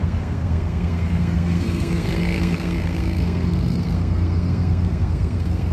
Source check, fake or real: fake